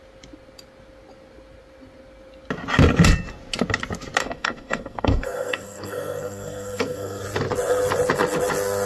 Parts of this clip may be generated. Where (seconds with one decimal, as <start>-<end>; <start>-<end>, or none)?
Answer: 4.2-7.2